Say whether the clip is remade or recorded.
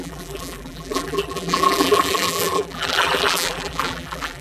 remade